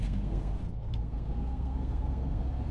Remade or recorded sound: remade